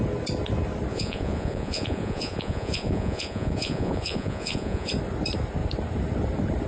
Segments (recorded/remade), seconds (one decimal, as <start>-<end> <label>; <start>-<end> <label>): 0.0-0.9 recorded; 0.9-4.9 remade; 4.9-6.7 recorded